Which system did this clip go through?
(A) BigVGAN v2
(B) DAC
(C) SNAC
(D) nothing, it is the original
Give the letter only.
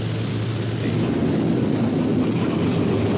D